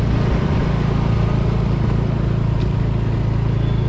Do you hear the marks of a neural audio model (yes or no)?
no